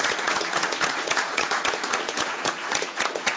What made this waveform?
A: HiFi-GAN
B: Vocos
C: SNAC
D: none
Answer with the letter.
B